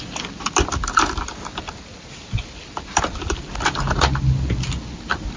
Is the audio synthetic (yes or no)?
no